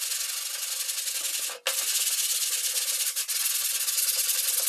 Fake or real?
real